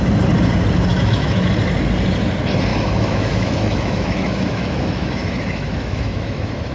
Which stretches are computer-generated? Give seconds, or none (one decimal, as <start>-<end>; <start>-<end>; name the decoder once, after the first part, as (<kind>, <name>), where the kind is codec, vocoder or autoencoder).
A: 0.9-1.5 (autoencoder, DAC-VAE); 2.7-6.7